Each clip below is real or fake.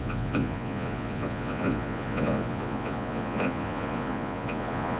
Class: fake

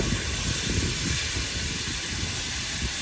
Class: real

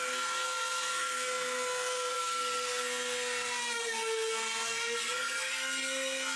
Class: fake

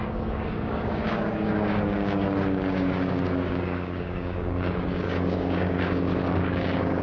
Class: fake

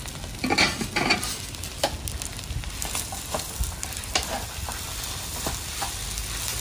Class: real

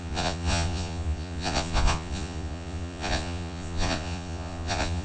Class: fake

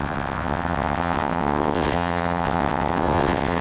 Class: fake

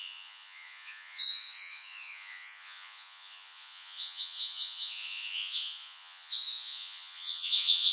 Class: fake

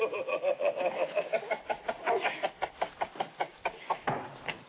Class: real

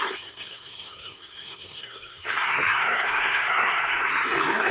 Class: fake